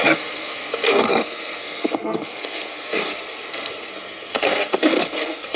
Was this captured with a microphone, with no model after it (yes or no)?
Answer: no